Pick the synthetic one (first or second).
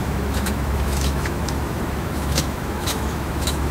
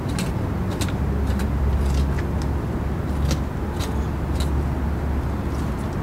first